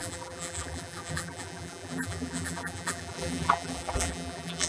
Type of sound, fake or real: fake